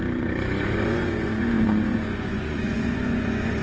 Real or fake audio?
fake